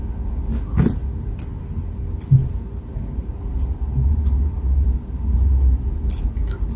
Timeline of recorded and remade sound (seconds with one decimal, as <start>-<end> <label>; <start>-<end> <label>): 0.0-2.4 recorded; 2.4-3.4 remade; 3.4-4.1 recorded; 4.1-5.5 remade; 5.5-6.8 recorded